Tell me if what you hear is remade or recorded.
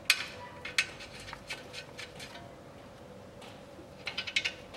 recorded